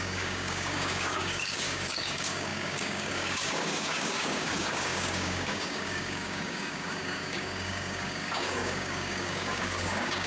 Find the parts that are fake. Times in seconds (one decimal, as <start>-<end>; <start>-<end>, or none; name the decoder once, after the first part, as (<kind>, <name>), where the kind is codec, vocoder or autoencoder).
0.0-10.3 (codec, DAC)